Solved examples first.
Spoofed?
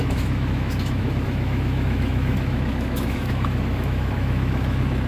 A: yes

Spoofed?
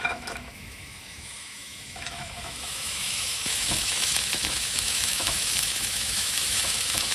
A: yes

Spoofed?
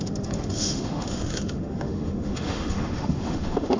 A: yes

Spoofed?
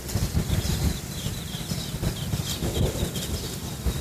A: no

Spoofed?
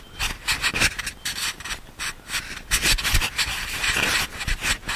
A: no